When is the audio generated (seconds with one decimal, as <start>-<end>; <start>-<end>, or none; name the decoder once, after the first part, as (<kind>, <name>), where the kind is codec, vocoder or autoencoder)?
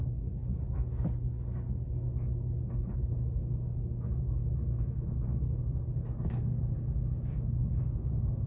0.0-0.4 (codec, DAC); 2.7-8.5